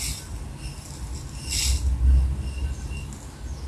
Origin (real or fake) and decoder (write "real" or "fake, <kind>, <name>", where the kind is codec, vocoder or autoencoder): real